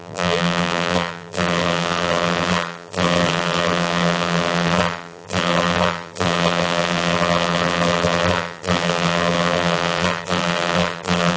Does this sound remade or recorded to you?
remade